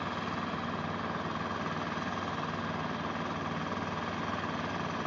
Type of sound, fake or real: real